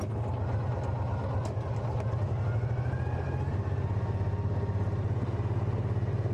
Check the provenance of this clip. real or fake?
real